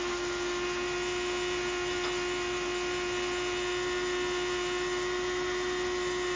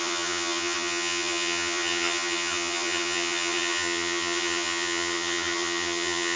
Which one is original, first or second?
first